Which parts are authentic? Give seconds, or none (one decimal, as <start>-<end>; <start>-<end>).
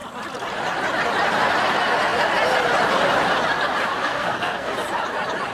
0.0-4.0; 4.7-5.5